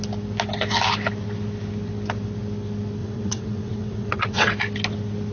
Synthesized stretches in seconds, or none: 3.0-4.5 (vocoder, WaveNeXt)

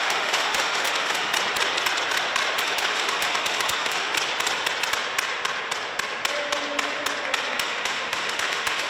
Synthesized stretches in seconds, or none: 0.0-1.3 (autoencoder, DAC-VAE); 2.6-4.1; 7.6-8.9

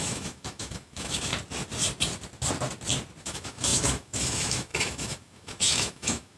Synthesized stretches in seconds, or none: 0.0-1.3 (autoencoder, DAC-VAE); 3.2-6.4

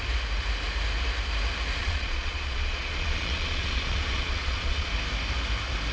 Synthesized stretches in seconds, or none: 1.8-4.9 (vocoder, Vocos)

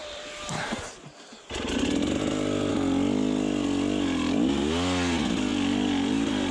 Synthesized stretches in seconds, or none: 0.0-0.9 (vocoder, BigVGAN v2); 5.5-6.5

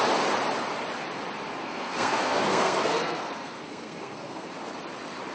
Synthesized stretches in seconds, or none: 1.6-4.5 (codec, SNAC)

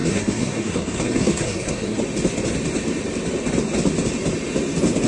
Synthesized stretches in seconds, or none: 0.0-2.0 (codec, SNAC)